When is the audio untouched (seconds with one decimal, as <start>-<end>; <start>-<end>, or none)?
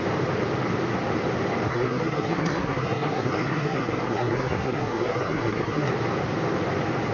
0.0-1.7; 5.9-7.1